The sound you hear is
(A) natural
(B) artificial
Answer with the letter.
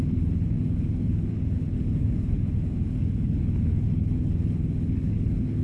B